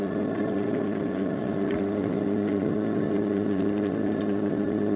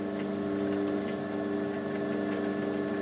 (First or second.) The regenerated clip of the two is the first